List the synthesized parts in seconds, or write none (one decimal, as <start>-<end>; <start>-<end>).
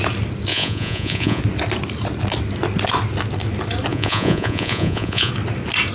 0.5-1.4; 3.9-5.3